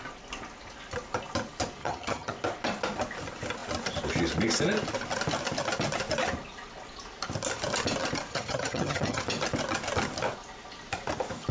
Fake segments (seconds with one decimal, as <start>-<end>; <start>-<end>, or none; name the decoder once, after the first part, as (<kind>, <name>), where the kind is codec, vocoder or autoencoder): 1.8-2.3 (vocoder, HiFi-GAN); 8.3-9.2